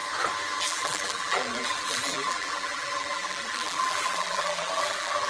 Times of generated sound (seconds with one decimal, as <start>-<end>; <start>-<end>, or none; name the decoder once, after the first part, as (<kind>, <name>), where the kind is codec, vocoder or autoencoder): 0.6-5.3 (vocoder, BigVGAN v2)